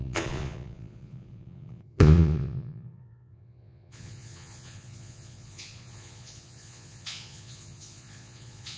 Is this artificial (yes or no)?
yes